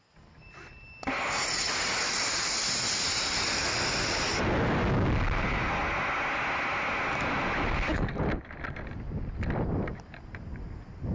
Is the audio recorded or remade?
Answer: recorded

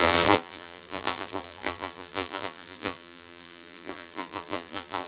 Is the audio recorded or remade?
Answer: remade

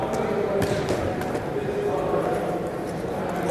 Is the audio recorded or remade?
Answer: recorded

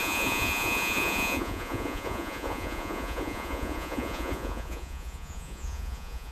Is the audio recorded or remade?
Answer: remade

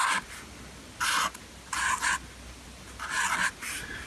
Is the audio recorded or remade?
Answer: recorded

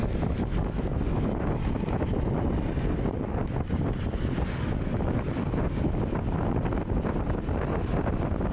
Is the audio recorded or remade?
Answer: recorded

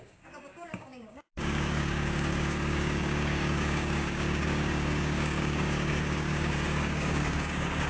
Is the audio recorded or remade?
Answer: remade